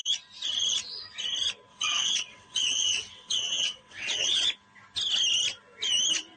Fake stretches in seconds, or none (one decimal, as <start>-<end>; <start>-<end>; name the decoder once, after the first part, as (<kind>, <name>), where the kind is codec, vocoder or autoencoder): 1.7-4.4 (vocoder, WaveNeXt)